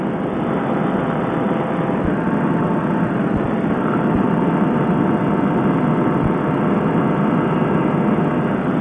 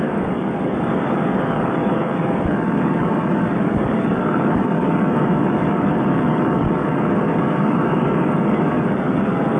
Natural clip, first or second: first